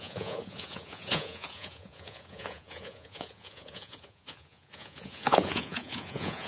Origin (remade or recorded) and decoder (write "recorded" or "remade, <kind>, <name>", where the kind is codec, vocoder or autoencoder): remade, vocoder, Vocos